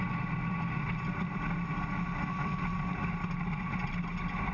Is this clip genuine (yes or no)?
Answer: yes